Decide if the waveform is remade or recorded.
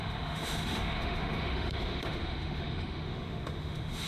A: remade